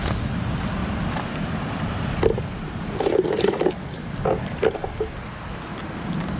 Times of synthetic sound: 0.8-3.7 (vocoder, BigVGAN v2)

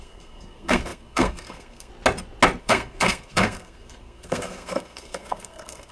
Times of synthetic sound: 0.0-1.9 (codec, SNAC); 2.6-5.9

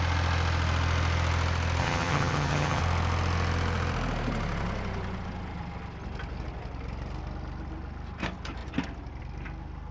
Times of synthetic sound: 1.8-2.8 (vocoder, HiFi-GAN)

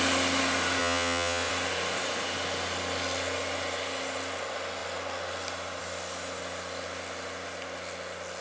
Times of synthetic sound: 0.8-1.5 (vocoder, WaveNeXt)

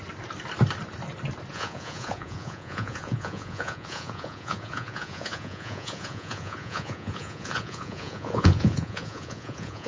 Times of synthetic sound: 1.5-9.9 (vocoder, Vocos)

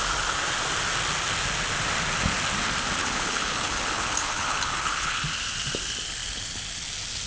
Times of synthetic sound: 3.0-5.2 (codec, HILCodec)